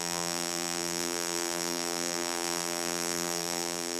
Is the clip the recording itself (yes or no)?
no